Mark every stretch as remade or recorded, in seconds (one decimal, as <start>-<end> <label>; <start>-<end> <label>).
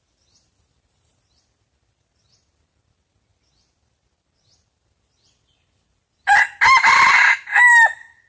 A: 0.0-8.3 recorded